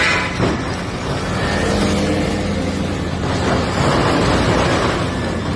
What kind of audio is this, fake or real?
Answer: real